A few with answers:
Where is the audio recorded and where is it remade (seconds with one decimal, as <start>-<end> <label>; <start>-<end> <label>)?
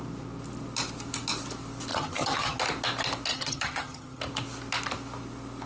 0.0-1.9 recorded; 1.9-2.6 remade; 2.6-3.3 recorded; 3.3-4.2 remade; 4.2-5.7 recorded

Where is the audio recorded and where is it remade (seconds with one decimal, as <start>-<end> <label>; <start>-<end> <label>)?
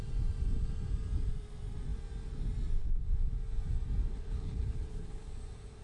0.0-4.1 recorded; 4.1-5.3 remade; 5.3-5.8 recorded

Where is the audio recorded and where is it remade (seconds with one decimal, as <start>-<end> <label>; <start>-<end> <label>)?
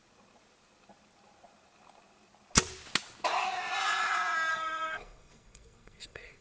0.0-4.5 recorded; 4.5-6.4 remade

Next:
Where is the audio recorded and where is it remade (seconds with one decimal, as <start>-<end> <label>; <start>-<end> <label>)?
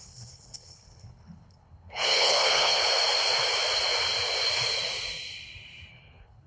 0.0-2.8 remade; 2.8-5.9 recorded; 5.9-6.5 remade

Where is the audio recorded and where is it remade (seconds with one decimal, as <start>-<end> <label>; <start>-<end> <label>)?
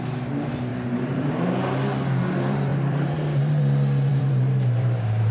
0.0-0.7 recorded; 0.7-1.3 remade; 1.3-2.7 recorded; 2.7-3.6 remade; 3.6-4.1 recorded; 4.1-5.3 remade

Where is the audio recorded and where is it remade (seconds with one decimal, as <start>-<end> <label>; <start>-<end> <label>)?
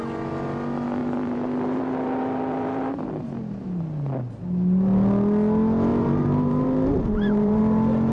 0.0-1.0 recorded; 1.0-3.8 remade; 3.8-5.9 recorded; 5.9-7.6 remade; 7.6-8.1 recorded